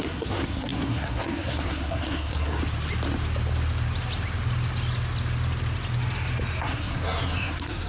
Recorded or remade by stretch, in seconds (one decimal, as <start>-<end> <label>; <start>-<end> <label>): 0.0-2.6 remade; 2.6-6.6 recorded; 6.6-7.9 remade